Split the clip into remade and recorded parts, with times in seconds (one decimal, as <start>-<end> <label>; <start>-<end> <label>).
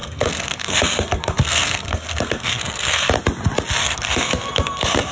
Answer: 0.0-3.1 remade; 3.1-3.8 recorded; 3.8-5.1 remade